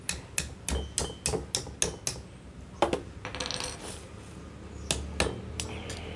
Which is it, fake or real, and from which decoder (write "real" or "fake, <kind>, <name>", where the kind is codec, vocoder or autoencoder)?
real